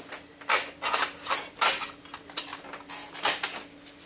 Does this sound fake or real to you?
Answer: real